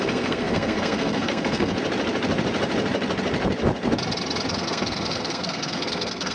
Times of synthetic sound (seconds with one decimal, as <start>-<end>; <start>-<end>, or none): 0.0-1.7; 4.5-6.3